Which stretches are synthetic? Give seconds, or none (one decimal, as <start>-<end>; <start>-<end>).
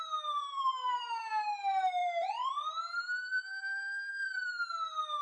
0.0-5.2